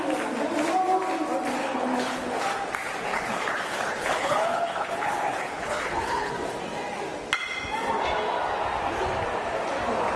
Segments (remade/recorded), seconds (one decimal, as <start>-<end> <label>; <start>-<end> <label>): 0.0-1.6 recorded; 1.6-2.4 remade; 2.4-3.1 recorded; 3.1-6.3 remade; 6.3-10.2 recorded